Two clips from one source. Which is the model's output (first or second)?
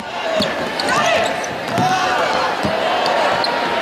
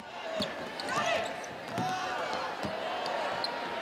first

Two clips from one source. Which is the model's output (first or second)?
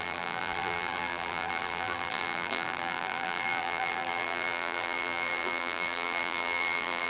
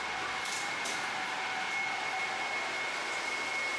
first